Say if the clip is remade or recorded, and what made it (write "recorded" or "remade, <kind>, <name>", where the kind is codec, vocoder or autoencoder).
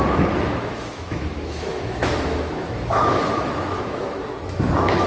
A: remade, autoencoder, DAC-VAE